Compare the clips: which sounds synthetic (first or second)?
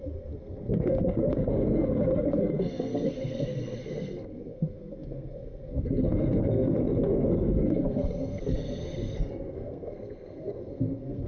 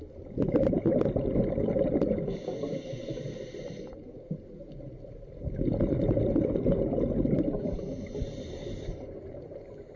first